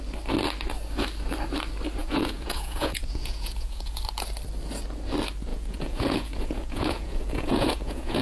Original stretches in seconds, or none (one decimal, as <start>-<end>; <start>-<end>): 0.0-2.0; 4.0-5.5